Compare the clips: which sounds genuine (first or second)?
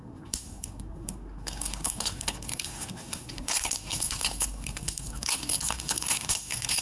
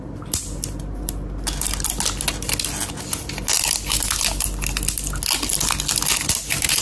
second